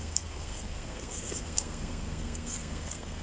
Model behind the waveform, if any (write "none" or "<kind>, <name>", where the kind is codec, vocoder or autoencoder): codec, SNAC